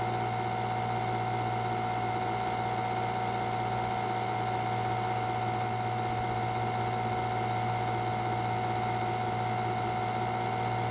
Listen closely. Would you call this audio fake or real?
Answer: real